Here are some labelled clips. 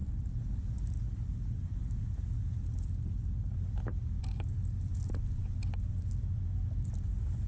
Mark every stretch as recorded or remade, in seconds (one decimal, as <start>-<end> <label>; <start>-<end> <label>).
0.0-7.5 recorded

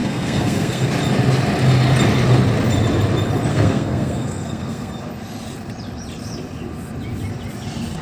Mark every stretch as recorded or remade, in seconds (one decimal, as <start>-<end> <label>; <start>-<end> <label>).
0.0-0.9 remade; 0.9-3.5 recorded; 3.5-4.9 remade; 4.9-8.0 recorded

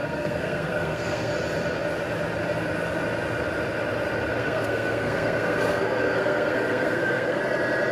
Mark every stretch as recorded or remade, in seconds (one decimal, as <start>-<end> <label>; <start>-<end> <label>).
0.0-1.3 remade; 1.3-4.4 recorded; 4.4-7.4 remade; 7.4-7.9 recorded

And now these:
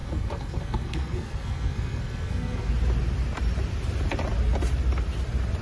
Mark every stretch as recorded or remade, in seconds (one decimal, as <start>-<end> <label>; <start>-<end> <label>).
0.0-2.7 remade; 2.7-5.6 recorded